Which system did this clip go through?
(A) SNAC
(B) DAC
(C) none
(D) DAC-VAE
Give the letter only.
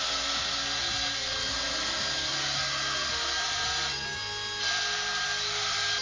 C